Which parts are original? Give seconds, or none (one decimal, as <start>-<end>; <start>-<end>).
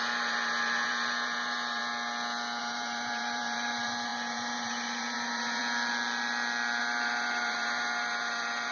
1.8-2.6; 5.6-6.8